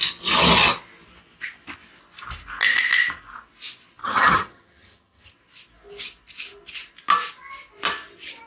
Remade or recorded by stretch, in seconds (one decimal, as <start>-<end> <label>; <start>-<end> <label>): 0.0-4.0 recorded; 4.0-5.3 remade; 5.3-8.5 recorded

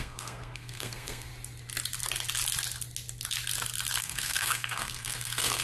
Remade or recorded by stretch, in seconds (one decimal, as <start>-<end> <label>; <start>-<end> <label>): 0.0-1.3 remade; 1.3-4.0 recorded; 4.0-5.6 remade

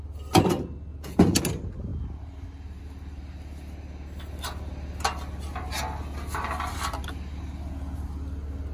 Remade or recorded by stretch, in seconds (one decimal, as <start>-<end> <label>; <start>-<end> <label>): 0.0-0.9 recorded; 0.9-1.4 remade; 1.4-8.7 recorded

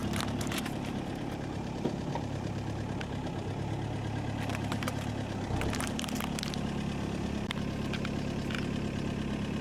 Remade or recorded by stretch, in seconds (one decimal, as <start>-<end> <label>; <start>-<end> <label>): 0.0-2.8 remade; 2.8-4.5 recorded; 4.5-5.1 remade; 5.1-9.6 recorded

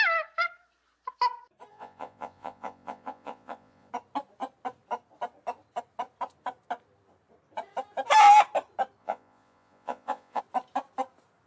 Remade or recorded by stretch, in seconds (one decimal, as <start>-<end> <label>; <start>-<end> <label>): 0.0-1.7 recorded; 1.7-3.9 remade; 3.9-9.0 recorded; 9.0-10.4 remade; 10.4-11.5 recorded

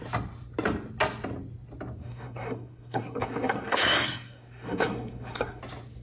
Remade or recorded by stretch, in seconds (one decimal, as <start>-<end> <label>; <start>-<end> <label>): 0.0-2.0 recorded; 2.0-5.6 remade; 5.6-6.0 recorded

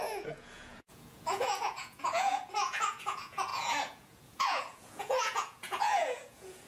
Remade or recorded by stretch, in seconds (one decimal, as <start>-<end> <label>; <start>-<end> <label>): 0.0-6.7 remade

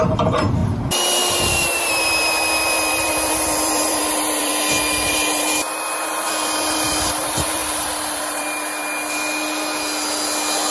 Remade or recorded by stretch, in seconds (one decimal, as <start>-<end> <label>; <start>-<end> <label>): 0.0-4.5 remade; 4.5-5.1 recorded; 5.1-8.8 remade; 8.8-10.7 recorded